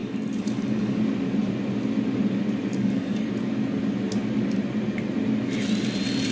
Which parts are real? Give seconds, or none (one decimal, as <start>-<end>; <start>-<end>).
1.0-2.7; 3.3-6.3